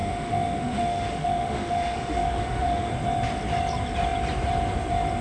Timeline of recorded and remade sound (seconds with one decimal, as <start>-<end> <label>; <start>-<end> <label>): 0.0-2.9 remade; 2.9-5.2 recorded